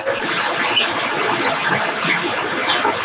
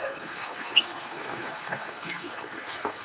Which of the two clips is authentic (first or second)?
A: first